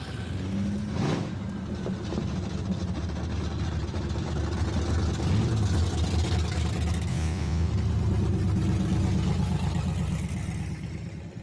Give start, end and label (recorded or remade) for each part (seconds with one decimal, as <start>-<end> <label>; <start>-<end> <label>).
0.0-7.1 recorded; 7.1-7.7 remade; 7.7-11.4 recorded